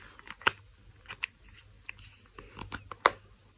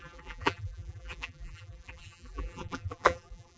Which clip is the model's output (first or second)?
second